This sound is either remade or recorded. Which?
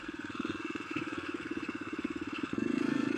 remade